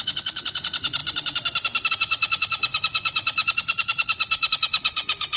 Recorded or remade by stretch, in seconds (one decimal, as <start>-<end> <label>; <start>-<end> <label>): 0.0-1.0 remade; 1.0-1.9 recorded; 1.9-5.4 remade